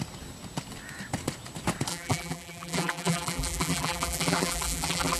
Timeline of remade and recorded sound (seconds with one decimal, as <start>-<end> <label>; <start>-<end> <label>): 0.0-1.9 recorded; 1.9-5.2 remade

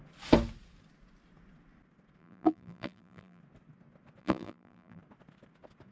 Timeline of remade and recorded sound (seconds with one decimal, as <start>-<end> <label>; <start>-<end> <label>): 0.0-2.2 recorded; 2.2-3.4 remade; 3.4-4.2 recorded; 4.2-5.0 remade; 5.0-5.9 recorded

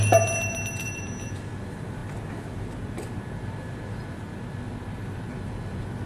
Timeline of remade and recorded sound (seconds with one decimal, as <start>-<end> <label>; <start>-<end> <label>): 0.0-6.1 recorded

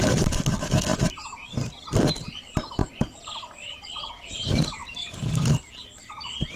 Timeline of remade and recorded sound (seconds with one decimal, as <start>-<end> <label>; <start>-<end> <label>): 0.0-2.8 remade; 2.8-4.1 recorded; 4.1-4.8 remade; 4.8-6.6 recorded

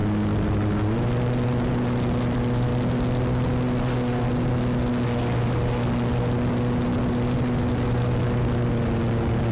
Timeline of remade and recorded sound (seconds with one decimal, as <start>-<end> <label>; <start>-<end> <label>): 0.0-1.7 recorded; 1.7-2.7 remade; 2.7-5.2 recorded; 5.2-9.5 remade

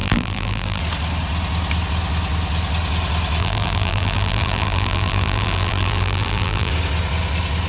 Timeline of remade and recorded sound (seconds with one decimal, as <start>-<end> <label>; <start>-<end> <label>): 0.0-0.8 remade; 0.8-3.4 recorded; 3.4-6.7 remade; 6.7-7.7 recorded

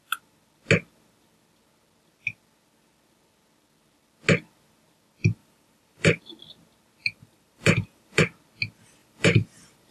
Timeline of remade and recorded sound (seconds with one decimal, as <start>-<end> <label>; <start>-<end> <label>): 0.0-5.4 recorded; 5.4-6.2 remade; 6.2-7.0 recorded; 7.0-8.2 remade; 8.2-9.0 recorded; 9.0-9.9 remade

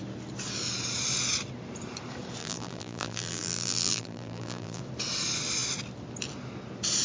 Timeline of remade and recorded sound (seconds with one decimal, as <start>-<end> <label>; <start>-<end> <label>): 0.0-2.4 recorded; 2.4-4.8 remade; 4.8-7.0 recorded